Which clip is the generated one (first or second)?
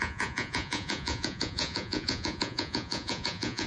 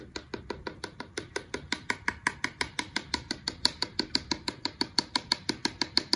first